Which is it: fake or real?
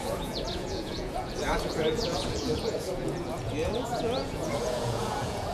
fake